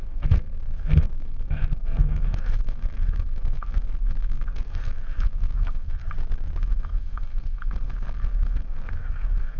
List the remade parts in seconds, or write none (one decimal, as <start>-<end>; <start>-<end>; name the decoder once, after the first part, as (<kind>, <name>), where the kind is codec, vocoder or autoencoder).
0.0-6.0 (codec, SNAC); 6.6-9.6